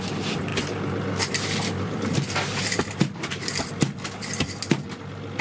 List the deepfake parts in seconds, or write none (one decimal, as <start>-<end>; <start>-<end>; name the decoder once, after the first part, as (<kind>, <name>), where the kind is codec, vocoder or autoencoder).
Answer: none